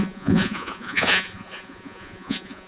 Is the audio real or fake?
fake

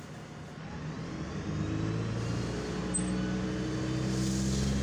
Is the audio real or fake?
real